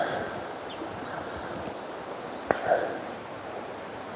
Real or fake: real